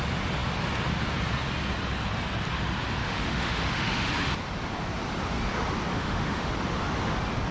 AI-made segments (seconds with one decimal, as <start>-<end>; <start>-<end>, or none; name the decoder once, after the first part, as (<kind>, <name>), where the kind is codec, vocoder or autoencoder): 3.0-4.1 (autoencoder, DAC-VAE); 5.9-6.5